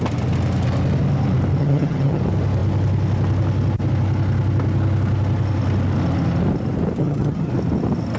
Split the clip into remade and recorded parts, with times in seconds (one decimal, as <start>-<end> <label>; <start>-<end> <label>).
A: 0.0-1.6 recorded; 1.6-2.2 remade; 2.2-7.0 recorded; 7.0-7.5 remade; 7.5-8.2 recorded